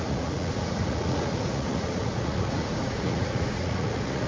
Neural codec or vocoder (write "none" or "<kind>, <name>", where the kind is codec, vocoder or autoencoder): vocoder, Vocos